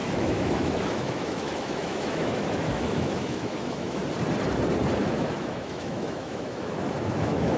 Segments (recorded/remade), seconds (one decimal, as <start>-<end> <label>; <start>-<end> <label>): 0.0-4.0 remade; 4.0-5.0 recorded; 5.0-7.6 remade